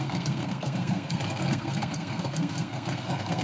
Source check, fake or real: fake